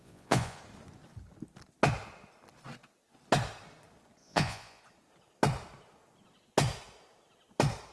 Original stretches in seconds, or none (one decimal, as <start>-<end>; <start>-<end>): 0.6-4.2; 4.8-7.9